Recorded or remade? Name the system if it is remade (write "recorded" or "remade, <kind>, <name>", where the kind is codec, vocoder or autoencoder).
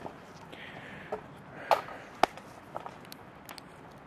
recorded